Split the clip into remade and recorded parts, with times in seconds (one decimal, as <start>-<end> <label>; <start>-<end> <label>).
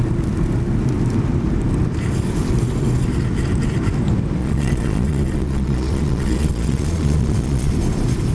0.0-4.4 recorded; 4.4-7.7 remade; 7.7-8.3 recorded